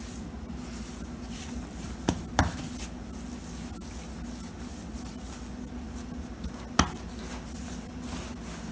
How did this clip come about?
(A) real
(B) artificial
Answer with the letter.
A